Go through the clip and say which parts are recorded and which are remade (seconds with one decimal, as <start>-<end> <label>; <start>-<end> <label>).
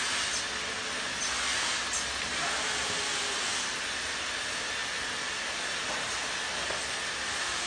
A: 0.0-7.7 recorded